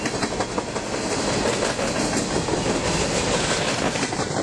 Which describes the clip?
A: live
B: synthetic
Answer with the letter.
A